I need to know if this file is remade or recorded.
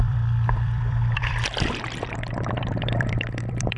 remade